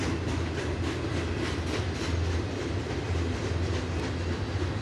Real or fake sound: real